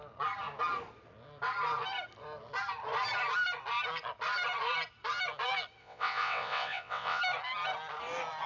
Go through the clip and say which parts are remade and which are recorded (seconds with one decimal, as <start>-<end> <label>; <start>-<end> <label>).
0.0-5.8 recorded; 5.8-7.2 remade; 7.2-8.5 recorded